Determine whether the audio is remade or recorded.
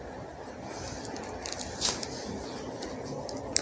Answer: recorded